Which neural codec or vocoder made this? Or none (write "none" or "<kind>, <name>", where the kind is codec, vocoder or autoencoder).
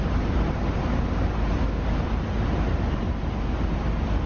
none